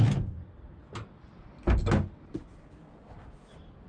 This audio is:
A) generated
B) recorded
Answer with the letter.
B